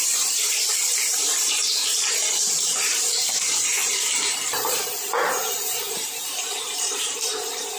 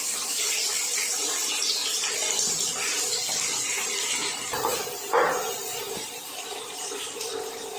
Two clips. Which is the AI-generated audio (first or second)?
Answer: first